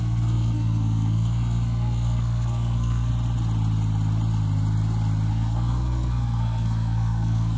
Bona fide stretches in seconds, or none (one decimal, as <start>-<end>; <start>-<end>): 3.1-5.3